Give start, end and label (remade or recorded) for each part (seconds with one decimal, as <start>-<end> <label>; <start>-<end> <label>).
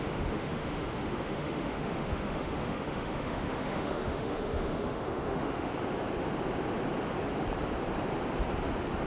0.0-5.7 remade; 5.7-9.1 recorded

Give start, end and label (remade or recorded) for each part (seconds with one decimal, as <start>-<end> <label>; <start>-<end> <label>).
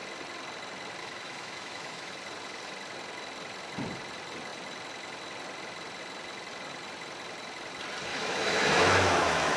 0.0-1.0 recorded; 1.0-2.1 remade; 2.1-8.1 recorded; 8.1-9.6 remade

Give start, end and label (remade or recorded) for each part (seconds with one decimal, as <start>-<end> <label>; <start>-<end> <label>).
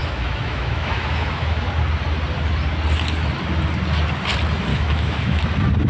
0.0-1.7 remade; 1.7-4.7 recorded; 4.7-5.4 remade; 5.4-5.9 recorded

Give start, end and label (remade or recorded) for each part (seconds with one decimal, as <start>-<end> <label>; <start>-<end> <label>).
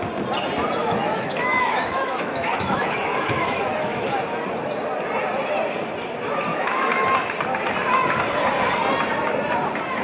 0.0-0.8 recorded; 0.8-4.2 remade; 4.2-6.5 recorded; 6.5-7.1 remade; 7.1-10.0 recorded